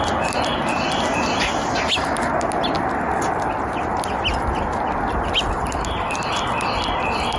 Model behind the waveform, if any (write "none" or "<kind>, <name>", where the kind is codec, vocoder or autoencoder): none